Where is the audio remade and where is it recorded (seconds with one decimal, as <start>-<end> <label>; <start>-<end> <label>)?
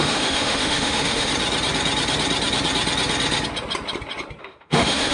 0.0-1.3 remade; 1.3-4.4 recorded; 4.4-5.1 remade